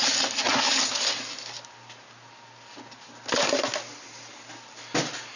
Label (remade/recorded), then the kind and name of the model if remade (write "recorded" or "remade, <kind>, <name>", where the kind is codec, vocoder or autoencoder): recorded